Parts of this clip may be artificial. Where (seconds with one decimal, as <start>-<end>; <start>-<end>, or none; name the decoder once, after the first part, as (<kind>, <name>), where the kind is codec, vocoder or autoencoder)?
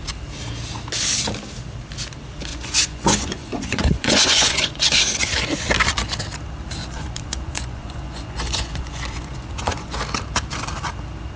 2.5-5.0 (vocoder, Vocos); 6.8-10.0